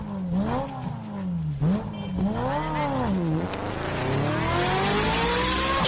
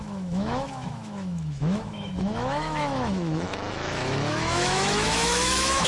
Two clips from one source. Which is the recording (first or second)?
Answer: first